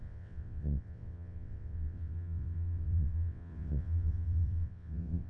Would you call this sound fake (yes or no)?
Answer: yes